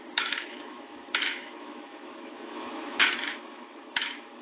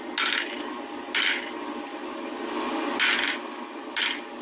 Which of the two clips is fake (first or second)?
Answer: first